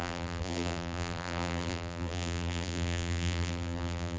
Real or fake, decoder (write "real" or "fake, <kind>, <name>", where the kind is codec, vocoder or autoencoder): fake, vocoder, BigVGAN v2